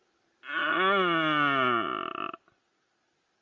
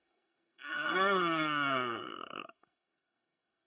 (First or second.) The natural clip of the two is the first